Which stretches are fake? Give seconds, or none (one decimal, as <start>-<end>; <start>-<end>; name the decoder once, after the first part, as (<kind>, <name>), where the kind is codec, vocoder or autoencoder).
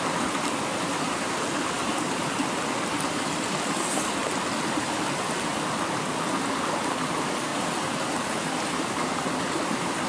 1.8-2.6 (vocoder, BigVGAN v2); 7.5-9.2